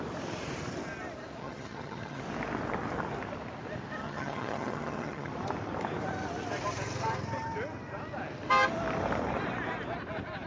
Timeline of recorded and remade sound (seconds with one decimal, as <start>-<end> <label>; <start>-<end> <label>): 0.0-1.4 recorded; 1.4-2.2 remade; 2.2-4.0 recorded; 4.0-5.3 remade; 5.3-10.5 recorded